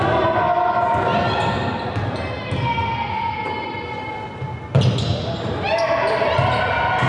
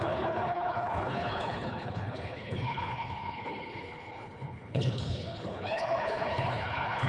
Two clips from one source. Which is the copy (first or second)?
second